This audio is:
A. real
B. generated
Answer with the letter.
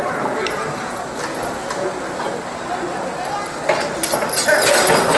A